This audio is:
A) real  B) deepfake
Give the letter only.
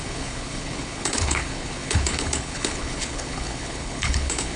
B